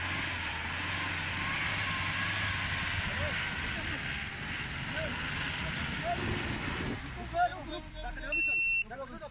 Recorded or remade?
recorded